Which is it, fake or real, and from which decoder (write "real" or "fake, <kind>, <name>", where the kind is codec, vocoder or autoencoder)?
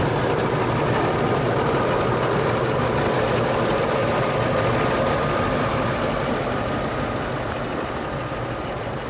real